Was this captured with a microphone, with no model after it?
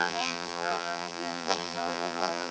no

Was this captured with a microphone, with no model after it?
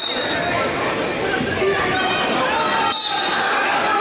yes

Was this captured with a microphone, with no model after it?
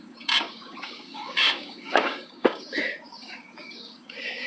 no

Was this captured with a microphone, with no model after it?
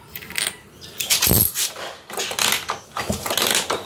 yes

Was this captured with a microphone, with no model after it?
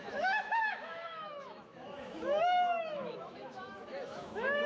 no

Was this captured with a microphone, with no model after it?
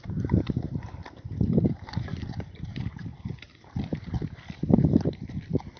yes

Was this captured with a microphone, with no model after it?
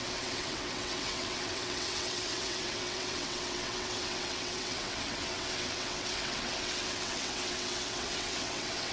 no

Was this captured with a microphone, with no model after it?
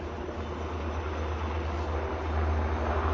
yes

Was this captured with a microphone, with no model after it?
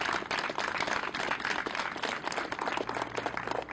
yes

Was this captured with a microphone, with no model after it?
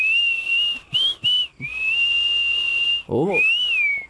yes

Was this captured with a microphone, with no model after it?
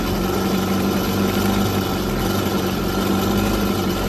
yes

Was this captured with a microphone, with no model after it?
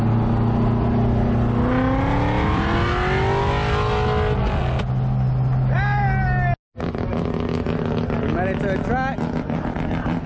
yes